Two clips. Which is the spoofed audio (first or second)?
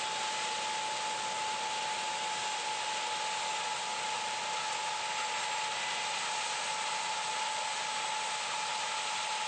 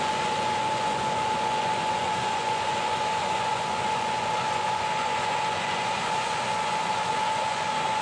second